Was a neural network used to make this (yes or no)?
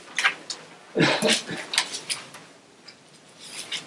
no